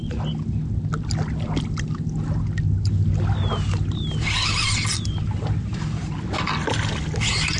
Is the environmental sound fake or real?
real